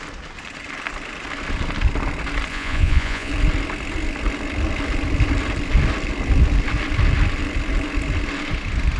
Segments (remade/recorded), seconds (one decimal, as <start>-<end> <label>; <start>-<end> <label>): 0.0-2.5 recorded; 2.5-3.3 remade; 3.3-9.0 recorded